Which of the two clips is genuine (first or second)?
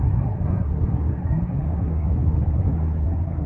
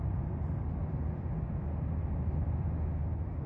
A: second